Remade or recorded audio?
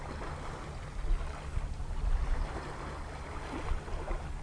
recorded